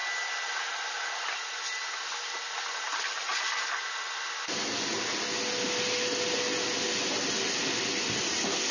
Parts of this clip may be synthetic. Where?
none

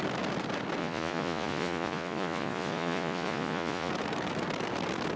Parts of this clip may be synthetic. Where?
0.8-3.9 (vocoder, Vocos)

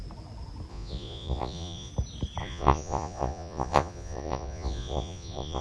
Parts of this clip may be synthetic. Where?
0.7-1.9 (vocoder, Vocos); 2.4-5.6

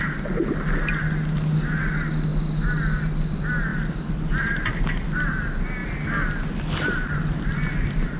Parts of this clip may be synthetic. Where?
none